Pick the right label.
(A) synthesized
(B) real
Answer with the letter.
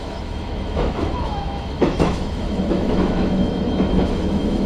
A